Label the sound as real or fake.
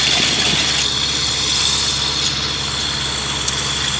real